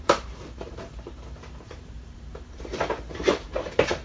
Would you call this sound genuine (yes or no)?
no